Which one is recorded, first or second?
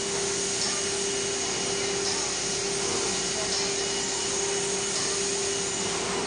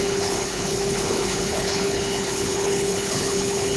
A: first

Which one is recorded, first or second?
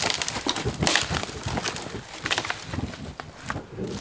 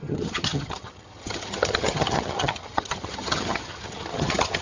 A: first